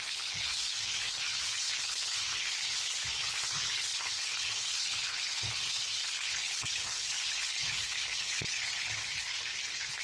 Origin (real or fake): fake